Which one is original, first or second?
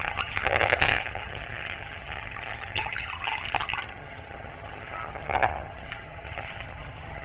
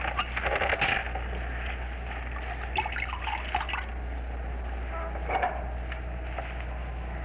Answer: second